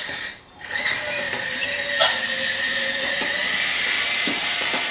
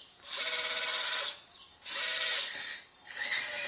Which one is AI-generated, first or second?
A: first